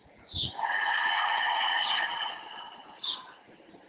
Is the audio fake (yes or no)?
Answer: yes